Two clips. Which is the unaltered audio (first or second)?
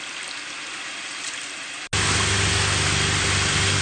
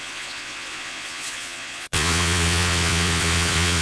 first